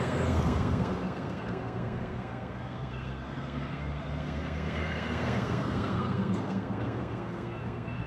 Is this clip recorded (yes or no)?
no